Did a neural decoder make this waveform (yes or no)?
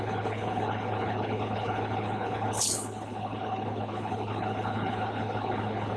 yes